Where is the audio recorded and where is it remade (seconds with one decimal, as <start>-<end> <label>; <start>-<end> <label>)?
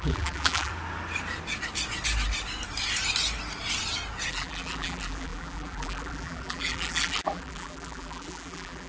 0.0-0.7 remade; 0.7-4.3 recorded; 4.3-8.9 remade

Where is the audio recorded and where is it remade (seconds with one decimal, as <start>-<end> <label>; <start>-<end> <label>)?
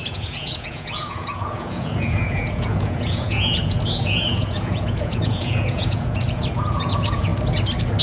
0.0-7.3 remade; 7.3-8.0 recorded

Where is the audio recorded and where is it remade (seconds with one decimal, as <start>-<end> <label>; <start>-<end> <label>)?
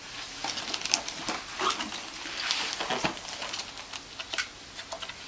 0.0-5.3 recorded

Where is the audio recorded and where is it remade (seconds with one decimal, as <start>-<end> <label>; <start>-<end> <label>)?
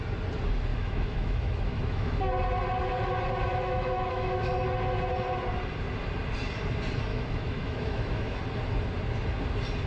0.0-0.7 recorded; 0.7-2.2 remade; 2.2-3.5 recorded; 3.5-4.5 remade; 4.5-7.1 recorded; 7.1-8.4 remade; 8.4-9.9 recorded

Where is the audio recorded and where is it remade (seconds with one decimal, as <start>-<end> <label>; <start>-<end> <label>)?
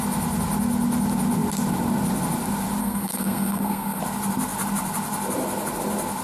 0.0-2.8 recorded; 2.8-4.0 remade; 4.0-6.2 recorded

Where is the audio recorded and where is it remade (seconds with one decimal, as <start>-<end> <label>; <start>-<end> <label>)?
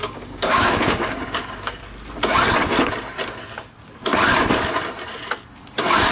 0.0-1.8 remade; 1.8-5.5 recorded; 5.5-6.1 remade